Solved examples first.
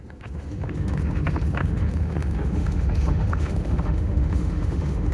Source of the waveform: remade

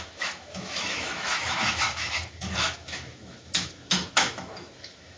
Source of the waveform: remade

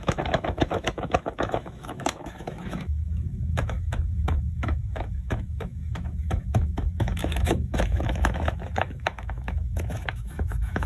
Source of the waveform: remade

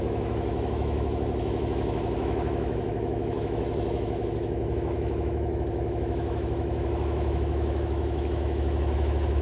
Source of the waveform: remade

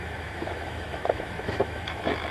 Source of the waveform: remade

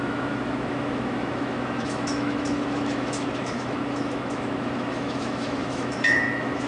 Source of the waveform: remade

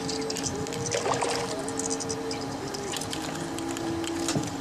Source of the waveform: recorded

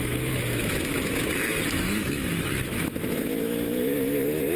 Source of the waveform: remade